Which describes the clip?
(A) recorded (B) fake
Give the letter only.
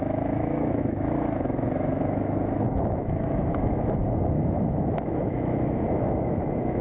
B